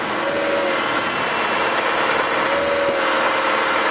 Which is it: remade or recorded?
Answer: recorded